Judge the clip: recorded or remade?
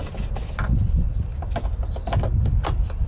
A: recorded